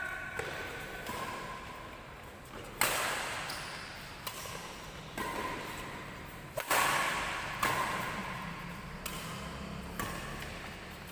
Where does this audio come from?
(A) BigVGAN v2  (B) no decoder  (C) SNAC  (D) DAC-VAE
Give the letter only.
B